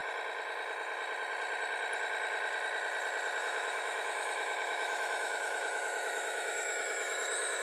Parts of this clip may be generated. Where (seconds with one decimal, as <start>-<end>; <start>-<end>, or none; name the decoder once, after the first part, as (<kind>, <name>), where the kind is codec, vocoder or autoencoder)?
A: 3.4-7.6 (autoencoder, DAC-VAE)